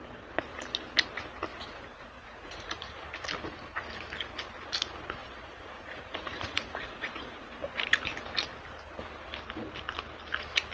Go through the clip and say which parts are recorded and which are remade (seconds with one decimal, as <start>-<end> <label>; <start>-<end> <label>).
0.0-1.5 recorded; 1.5-2.9 remade; 2.9-5.2 recorded; 5.2-7.6 remade; 7.6-10.7 recorded